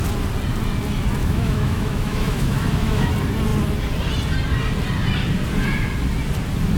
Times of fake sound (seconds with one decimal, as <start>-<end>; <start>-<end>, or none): 1.2-3.1